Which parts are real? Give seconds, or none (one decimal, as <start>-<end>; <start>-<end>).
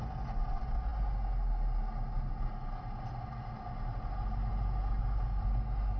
0.0-6.0